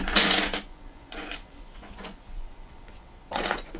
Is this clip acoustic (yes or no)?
no